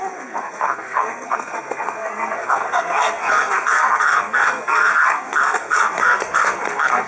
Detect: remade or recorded remade